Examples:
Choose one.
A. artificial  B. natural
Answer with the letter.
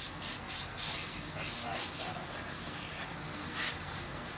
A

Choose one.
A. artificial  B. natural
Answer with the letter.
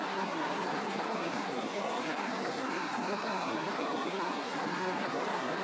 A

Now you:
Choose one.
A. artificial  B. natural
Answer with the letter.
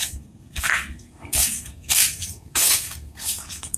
A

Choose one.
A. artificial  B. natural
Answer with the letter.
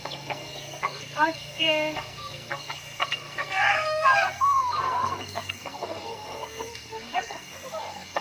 A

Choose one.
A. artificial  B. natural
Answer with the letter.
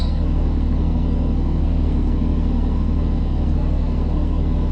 A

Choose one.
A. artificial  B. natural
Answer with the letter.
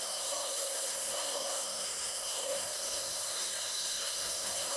A